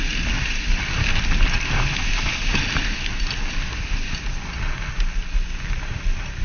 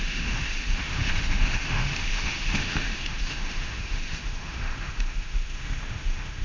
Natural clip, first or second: first